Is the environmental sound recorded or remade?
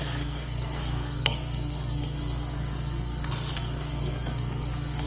remade